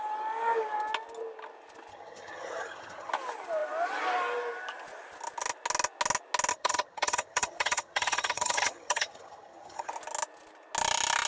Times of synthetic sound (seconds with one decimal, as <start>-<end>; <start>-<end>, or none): 1.9-3.1; 6.5-9.9